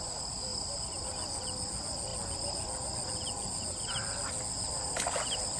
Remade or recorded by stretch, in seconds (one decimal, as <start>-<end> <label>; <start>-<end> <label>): 0.0-5.6 recorded